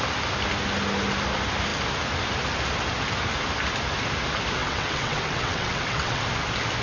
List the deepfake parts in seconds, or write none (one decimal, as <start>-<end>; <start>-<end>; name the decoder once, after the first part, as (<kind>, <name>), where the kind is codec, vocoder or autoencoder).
4.6-6.2 (vocoder, WaveNeXt)